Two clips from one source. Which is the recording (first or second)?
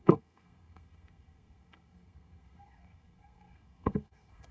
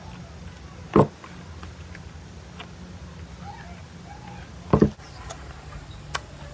second